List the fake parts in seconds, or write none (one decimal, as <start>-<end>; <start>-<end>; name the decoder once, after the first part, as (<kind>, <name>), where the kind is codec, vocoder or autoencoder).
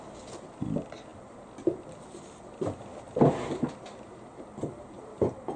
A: none